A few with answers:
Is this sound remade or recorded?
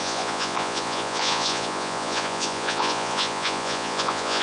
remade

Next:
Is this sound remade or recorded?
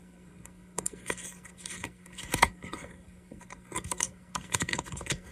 remade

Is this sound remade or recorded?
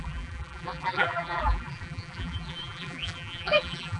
remade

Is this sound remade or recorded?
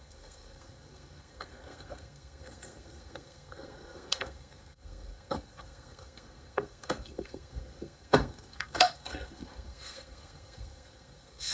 remade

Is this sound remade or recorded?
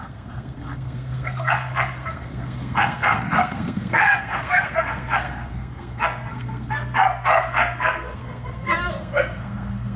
remade